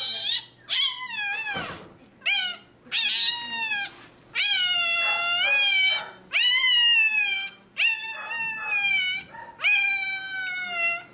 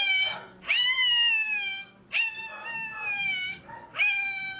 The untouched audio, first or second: first